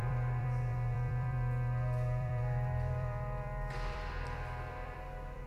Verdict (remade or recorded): remade